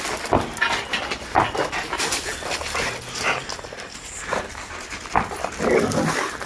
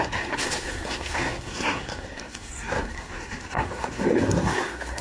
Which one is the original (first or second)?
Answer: first